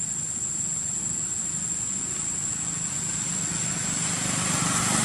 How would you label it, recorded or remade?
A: recorded